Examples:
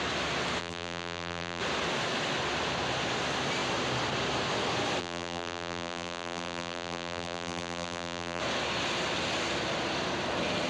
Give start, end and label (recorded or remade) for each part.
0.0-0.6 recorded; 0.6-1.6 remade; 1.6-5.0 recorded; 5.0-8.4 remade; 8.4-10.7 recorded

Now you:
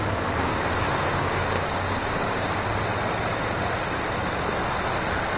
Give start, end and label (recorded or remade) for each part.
0.0-0.5 recorded; 0.5-2.5 remade; 2.5-5.4 recorded

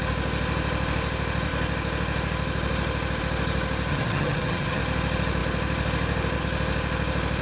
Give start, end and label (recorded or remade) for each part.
0.0-3.9 recorded; 3.9-4.8 remade; 4.8-7.4 recorded

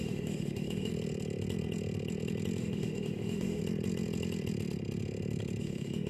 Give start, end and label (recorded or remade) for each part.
0.0-0.9 remade; 0.9-2.6 recorded; 2.6-3.6 remade; 3.6-5.6 recorded; 5.6-6.1 remade

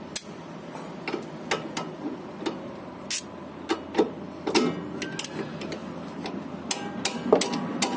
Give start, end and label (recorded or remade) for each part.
0.0-8.0 recorded

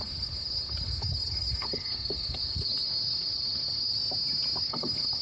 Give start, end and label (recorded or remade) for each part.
0.0-4.0 remade; 4.0-4.6 recorded; 4.6-5.2 remade

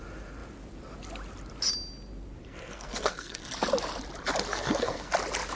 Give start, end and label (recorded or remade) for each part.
0.0-2.4 recorded; 2.4-3.5 remade; 3.5-4.5 recorded; 4.5-5.1 remade; 5.1-5.6 recorded